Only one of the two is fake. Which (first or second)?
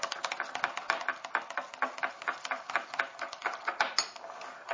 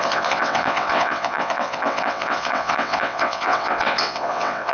second